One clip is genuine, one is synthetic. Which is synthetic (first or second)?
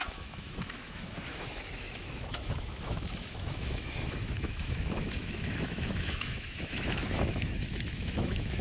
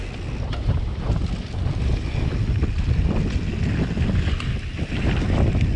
first